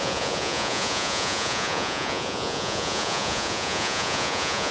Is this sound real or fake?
fake